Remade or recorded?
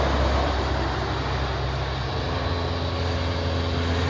recorded